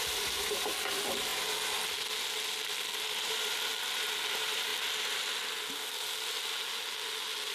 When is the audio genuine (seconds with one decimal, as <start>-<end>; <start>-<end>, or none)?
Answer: 1.3-3.2; 3.7-4.3; 4.7-7.5